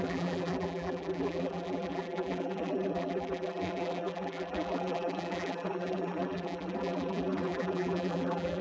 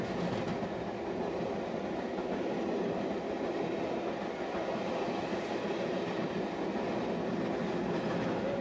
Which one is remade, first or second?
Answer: first